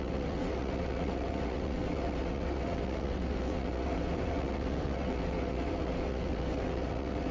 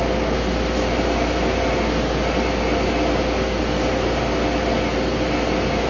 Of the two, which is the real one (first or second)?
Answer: second